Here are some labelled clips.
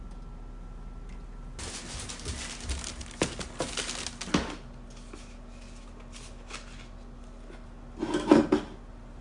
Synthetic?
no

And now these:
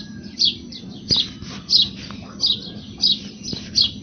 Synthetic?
no